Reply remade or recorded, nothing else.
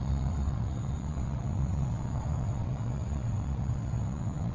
remade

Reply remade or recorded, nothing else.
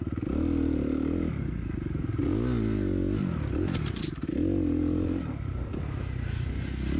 recorded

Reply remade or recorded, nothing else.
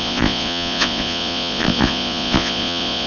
remade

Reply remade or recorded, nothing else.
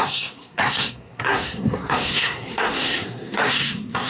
remade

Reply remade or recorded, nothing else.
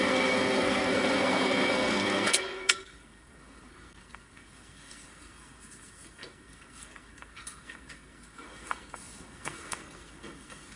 remade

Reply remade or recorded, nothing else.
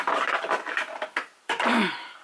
recorded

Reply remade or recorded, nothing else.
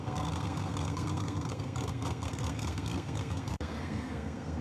remade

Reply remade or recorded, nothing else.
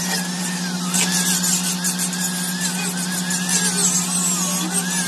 recorded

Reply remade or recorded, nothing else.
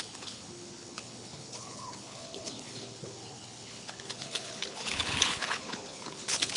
remade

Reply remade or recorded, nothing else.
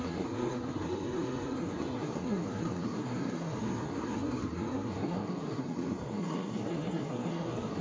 remade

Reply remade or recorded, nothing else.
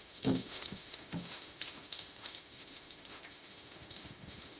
remade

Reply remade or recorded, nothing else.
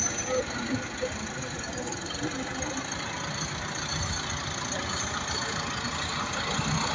recorded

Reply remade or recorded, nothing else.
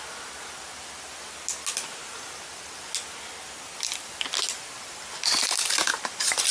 recorded